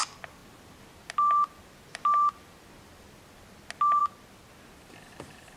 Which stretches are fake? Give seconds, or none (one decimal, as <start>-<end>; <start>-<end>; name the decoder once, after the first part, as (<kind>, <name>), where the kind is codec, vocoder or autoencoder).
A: none

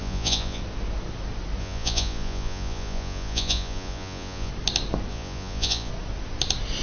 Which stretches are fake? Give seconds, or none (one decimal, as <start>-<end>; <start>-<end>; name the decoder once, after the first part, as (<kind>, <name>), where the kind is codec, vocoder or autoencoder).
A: 0.0-0.6 (vocoder, Vocos); 1.6-4.5; 5.1-5.9